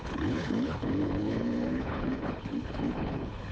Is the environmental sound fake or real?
fake